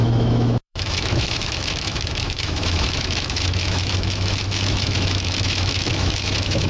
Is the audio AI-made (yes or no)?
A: yes